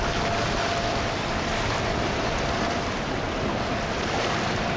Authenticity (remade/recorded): remade